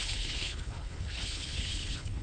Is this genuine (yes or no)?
no